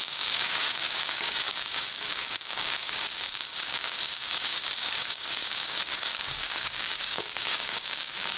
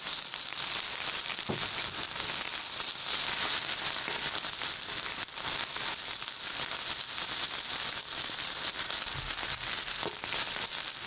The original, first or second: second